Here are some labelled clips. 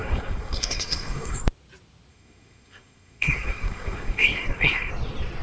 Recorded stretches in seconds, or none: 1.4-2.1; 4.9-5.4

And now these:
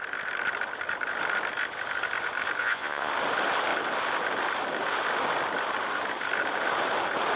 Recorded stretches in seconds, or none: 0.0-2.6; 3.1-7.4

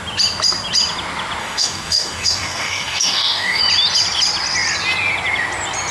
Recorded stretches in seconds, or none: 0.0-1.4; 3.6-5.9

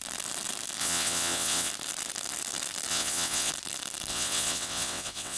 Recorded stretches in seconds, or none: 0.0-0.8; 1.7-2.9; 3.5-4.1

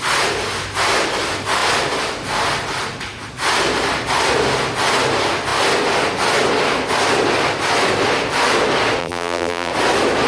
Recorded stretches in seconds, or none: 0.0-9.0; 9.7-10.3

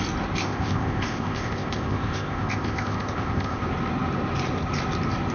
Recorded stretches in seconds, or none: 0.0-0.4; 3.6-5.3

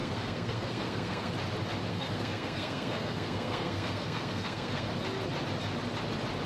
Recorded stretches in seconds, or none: 1.3-1.9; 4.9-6.5

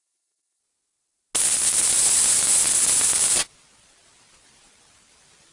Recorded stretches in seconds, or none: 0.6-1.8